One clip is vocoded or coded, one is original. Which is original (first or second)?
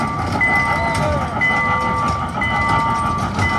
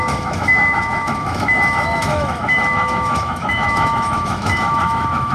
first